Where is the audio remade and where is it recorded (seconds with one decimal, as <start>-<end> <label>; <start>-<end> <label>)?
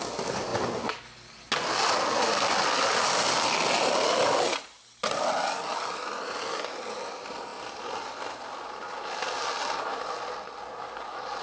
0.0-11.4 recorded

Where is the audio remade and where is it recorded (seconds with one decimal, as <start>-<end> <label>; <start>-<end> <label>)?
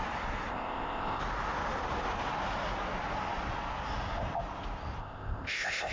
0.0-0.5 recorded; 0.5-1.2 remade; 1.2-5.0 recorded; 5.0-5.9 remade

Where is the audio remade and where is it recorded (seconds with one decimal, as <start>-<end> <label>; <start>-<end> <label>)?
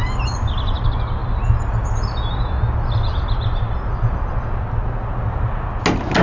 0.0-6.2 recorded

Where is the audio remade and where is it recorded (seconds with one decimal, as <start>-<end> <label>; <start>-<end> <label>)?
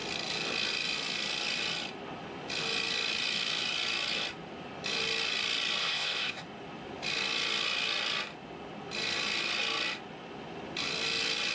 0.0-5.8 recorded; 5.8-6.4 remade; 6.4-11.5 recorded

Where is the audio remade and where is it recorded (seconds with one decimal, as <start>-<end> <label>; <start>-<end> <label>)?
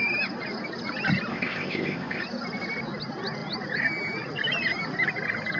0.0-1.3 recorded; 1.3-2.2 remade; 2.2-5.6 recorded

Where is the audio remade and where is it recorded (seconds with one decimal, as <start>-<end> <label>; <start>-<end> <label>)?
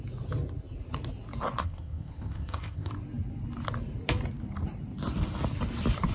0.0-1.6 recorded; 1.6-2.9 remade; 2.9-6.1 recorded